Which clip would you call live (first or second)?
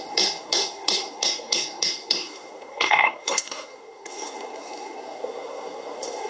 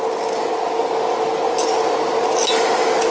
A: second